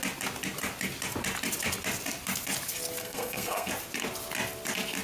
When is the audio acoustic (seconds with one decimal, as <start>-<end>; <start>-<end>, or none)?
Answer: 0.0-3.0; 3.7-5.0